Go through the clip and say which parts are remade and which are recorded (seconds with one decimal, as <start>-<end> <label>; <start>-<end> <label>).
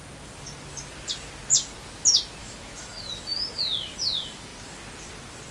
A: 0.0-2.4 recorded; 2.4-3.1 remade; 3.1-5.5 recorded